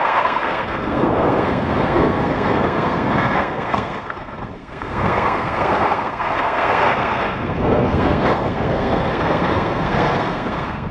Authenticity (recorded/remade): remade